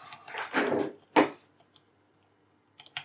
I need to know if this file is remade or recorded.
recorded